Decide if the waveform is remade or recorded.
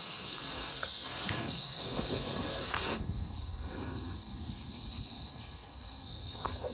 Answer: remade